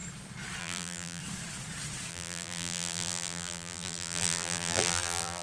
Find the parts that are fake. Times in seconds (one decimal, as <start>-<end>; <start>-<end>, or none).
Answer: 0.6-1.2; 2.1-5.4